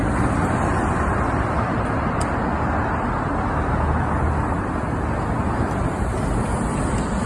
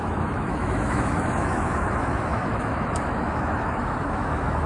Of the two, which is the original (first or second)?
first